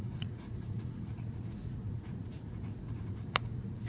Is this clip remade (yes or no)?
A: yes